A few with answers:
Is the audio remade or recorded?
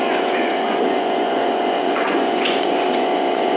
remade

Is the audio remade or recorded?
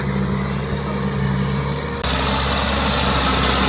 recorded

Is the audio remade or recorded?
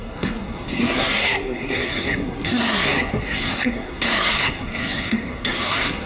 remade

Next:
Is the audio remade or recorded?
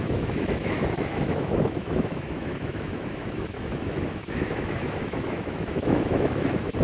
remade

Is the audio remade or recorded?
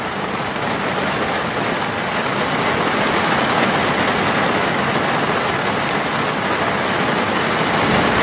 recorded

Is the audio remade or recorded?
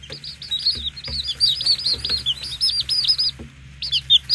recorded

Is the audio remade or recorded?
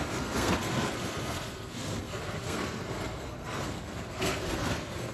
remade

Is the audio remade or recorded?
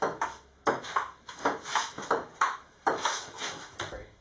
remade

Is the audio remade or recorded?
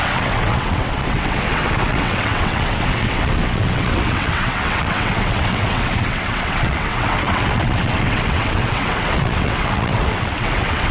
remade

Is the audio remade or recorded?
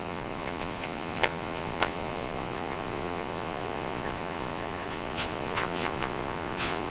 remade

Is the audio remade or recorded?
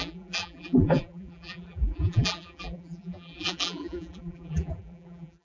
remade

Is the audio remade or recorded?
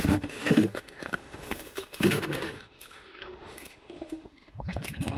remade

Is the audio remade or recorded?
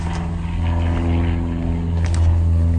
recorded